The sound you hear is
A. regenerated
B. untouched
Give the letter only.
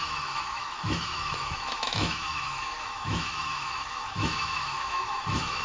A